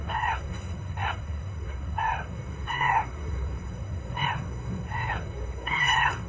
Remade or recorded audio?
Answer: remade